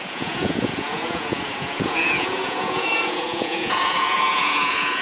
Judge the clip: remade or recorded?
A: remade